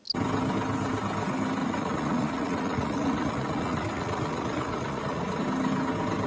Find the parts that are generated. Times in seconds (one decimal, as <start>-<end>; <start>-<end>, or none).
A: 1.6-5.4